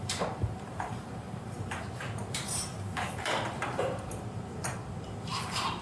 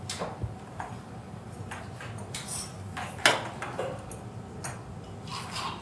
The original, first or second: second